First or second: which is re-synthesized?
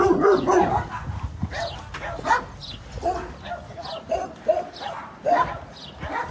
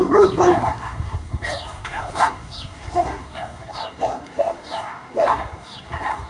second